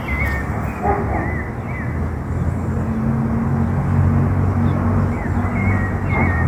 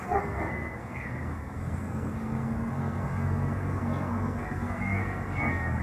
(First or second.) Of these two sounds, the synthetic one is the second